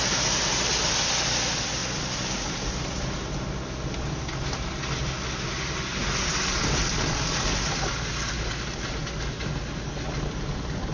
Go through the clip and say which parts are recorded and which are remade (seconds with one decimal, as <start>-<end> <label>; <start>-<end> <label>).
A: 0.0-10.9 recorded